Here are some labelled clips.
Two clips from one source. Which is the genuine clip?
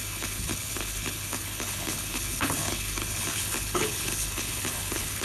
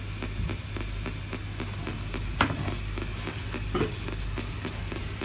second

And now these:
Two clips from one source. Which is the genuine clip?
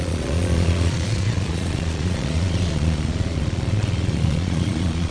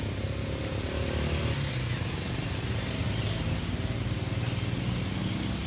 second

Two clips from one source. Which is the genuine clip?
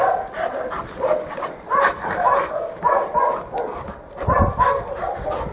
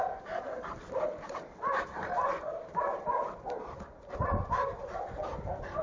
first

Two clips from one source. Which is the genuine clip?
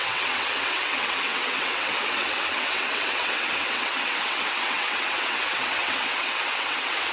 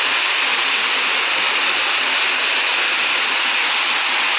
second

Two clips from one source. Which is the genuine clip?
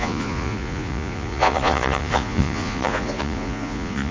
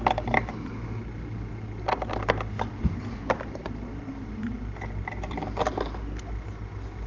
second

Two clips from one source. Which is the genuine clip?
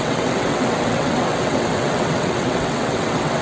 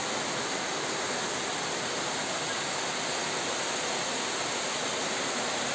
second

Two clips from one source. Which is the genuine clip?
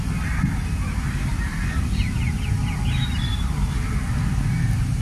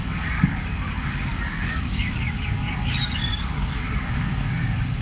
first